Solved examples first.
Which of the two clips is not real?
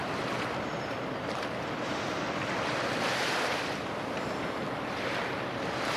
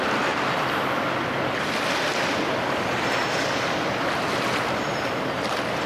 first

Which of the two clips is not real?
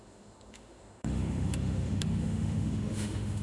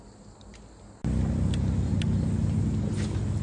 first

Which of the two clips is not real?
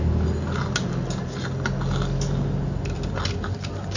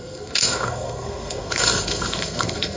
second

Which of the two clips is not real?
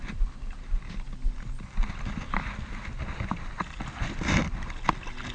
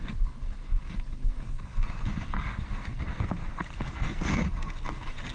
second